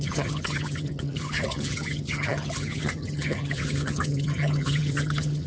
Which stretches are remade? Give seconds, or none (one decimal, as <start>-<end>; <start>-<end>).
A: 0.0-5.5